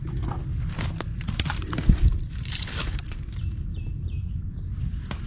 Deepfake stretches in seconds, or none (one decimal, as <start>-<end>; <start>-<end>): 1.1-3.2; 3.7-4.4